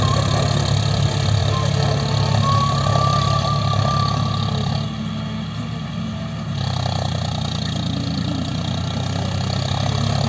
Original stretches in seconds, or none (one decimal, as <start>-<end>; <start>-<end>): 0.0-10.3